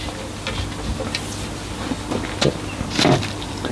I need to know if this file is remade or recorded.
recorded